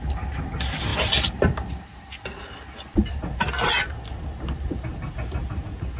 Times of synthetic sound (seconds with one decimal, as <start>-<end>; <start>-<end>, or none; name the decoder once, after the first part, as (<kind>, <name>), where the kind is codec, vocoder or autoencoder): none